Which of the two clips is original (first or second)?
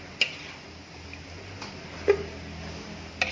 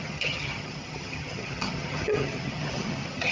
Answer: first